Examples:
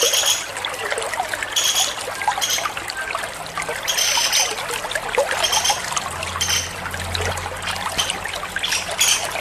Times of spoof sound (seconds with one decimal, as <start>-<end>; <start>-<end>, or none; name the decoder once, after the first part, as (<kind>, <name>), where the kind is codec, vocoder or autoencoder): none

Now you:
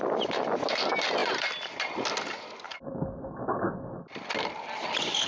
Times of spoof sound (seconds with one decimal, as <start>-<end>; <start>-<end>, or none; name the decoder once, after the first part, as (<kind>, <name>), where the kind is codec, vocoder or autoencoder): none

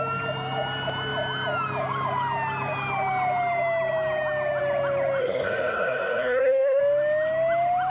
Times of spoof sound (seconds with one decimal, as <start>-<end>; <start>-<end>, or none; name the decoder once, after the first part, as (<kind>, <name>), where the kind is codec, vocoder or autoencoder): 5.2-6.8 (codec, SNAC)